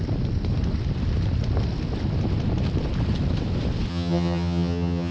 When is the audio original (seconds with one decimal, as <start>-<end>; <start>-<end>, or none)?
0.0-3.9